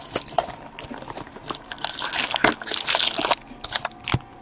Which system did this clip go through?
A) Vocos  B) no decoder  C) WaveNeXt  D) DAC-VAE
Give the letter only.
B